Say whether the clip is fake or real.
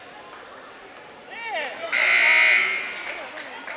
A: real